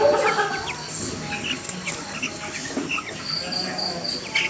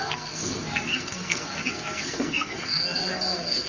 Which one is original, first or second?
first